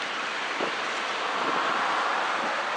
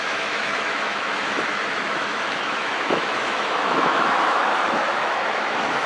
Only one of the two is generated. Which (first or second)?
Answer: second